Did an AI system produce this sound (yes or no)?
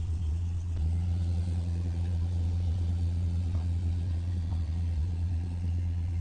yes